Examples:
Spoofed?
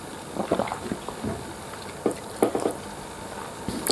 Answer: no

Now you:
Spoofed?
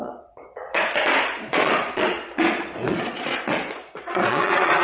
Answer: yes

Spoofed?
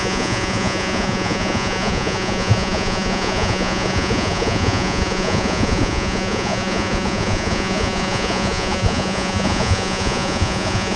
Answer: yes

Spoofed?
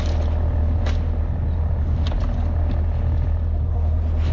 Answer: no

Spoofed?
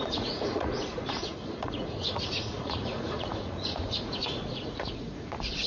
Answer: yes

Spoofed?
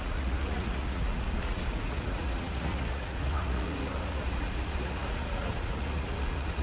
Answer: yes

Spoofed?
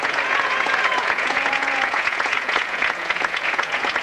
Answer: yes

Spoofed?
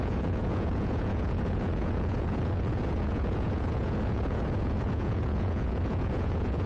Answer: yes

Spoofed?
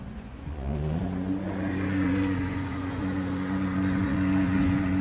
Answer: yes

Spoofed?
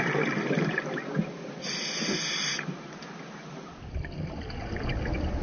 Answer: no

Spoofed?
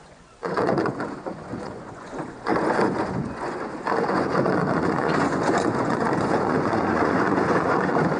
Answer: yes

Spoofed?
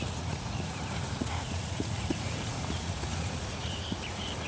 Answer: yes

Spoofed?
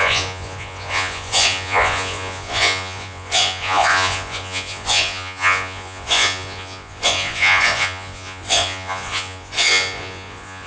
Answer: yes